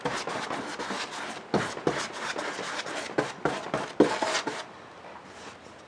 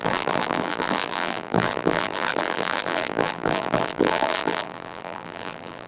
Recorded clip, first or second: first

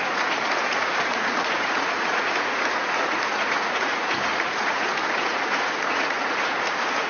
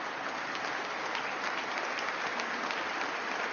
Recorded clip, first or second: second